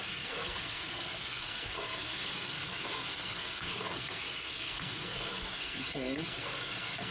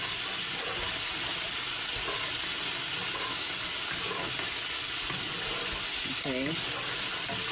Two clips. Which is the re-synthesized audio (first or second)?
first